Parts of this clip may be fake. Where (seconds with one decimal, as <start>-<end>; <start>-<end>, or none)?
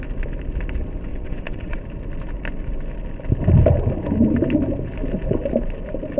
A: 1.1-1.8